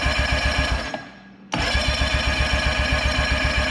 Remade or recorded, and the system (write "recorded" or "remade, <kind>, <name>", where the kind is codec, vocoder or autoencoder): recorded